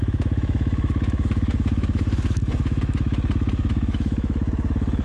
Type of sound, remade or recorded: remade